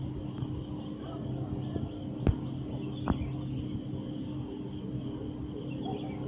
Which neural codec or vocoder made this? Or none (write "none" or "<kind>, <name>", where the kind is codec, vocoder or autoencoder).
none